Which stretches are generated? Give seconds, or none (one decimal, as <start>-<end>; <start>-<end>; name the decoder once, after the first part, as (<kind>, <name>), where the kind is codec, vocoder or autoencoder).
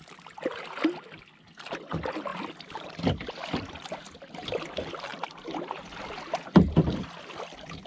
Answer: none